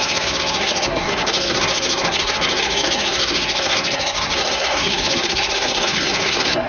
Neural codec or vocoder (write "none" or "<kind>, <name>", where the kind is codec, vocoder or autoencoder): codec, SNAC